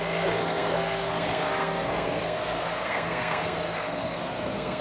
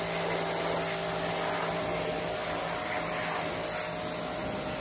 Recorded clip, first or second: second